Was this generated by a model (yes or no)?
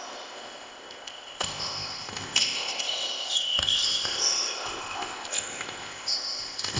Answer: yes